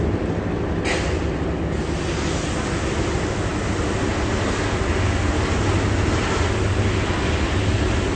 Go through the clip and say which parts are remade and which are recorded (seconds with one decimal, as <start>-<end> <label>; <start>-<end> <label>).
0.0-8.2 recorded